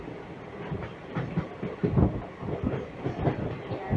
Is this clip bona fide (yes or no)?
yes